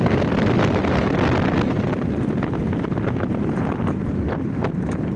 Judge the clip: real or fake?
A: real